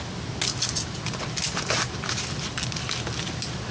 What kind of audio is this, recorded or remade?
recorded